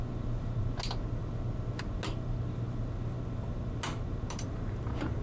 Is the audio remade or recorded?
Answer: recorded